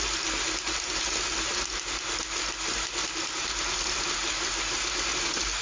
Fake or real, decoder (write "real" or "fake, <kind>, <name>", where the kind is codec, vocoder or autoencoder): real